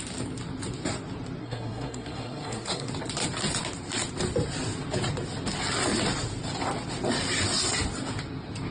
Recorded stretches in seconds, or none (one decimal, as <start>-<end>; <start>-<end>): 0.0-1.4; 2.9-8.7